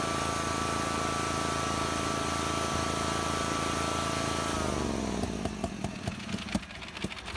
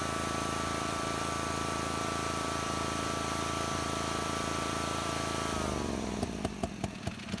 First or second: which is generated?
second